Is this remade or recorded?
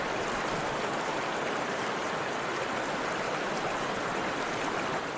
remade